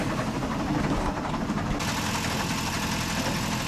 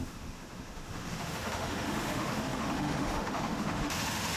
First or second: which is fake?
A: second